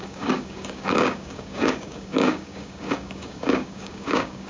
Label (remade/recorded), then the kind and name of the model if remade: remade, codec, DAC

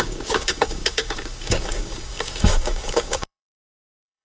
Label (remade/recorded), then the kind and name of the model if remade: remade, codec, DAC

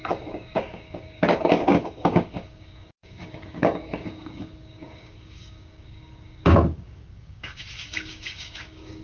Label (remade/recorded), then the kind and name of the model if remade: remade, codec, DAC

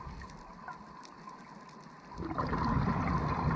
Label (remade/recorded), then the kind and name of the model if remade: recorded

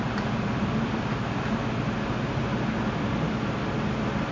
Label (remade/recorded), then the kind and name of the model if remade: recorded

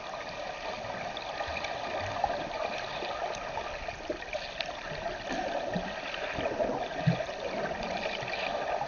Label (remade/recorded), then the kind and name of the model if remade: recorded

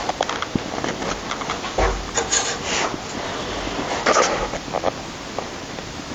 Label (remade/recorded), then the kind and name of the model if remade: recorded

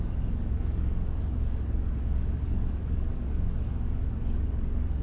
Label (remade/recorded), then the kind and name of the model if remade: remade, codec, DAC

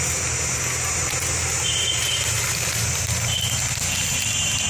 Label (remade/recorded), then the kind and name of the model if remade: recorded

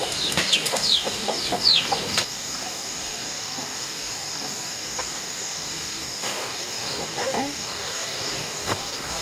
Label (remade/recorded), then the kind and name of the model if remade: remade, codec, DAC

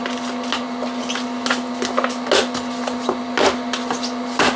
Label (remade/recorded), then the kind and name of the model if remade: recorded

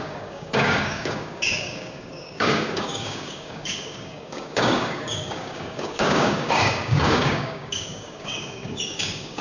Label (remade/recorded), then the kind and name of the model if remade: remade, codec, DAC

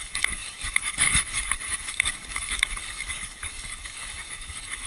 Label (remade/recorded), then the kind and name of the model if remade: remade, codec, DAC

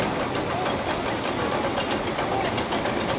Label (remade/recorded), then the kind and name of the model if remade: recorded